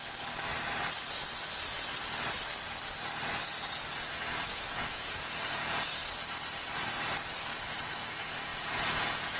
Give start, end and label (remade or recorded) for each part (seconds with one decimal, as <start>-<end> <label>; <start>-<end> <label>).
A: 0.0-4.7 recorded; 4.7-6.0 remade; 6.0-7.8 recorded; 7.8-9.4 remade